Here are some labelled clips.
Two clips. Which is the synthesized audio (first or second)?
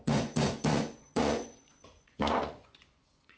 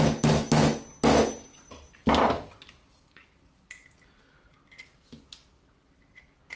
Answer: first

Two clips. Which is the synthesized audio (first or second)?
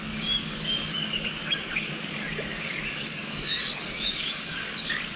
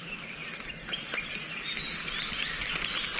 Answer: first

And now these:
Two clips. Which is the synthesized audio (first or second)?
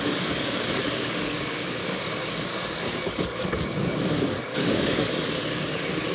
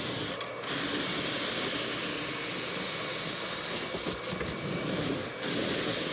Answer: first